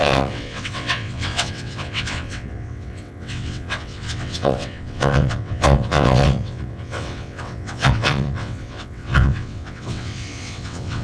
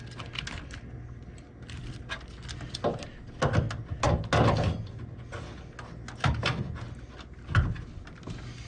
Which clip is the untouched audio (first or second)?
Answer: second